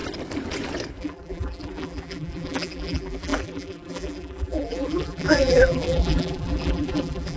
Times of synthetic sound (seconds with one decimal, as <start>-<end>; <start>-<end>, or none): 1.0-7.4